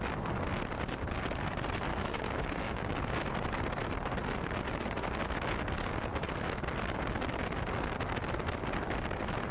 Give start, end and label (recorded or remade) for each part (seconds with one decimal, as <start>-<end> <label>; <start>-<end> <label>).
0.0-1.9 recorded; 1.9-3.2 remade; 3.2-9.5 recorded